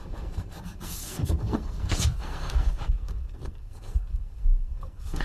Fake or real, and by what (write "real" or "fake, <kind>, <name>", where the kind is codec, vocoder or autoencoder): fake, codec, SNAC